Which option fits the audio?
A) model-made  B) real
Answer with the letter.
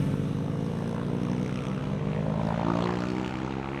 B